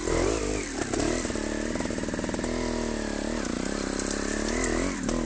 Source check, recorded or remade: recorded